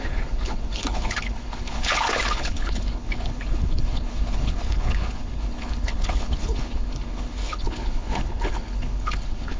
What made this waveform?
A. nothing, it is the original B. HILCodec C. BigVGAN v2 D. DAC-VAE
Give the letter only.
B